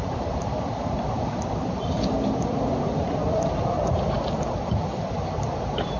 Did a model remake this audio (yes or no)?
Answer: yes